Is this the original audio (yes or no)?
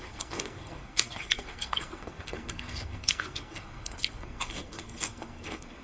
no